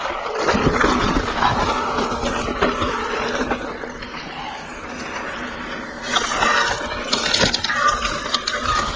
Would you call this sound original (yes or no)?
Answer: yes